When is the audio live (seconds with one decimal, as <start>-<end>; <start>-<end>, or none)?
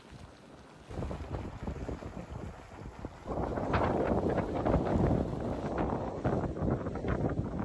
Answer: 0.0-3.5; 4.3-7.6